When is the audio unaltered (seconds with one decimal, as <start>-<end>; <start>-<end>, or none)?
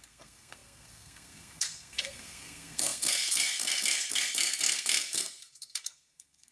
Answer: none